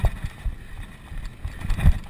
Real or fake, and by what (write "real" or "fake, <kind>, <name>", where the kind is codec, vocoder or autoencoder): real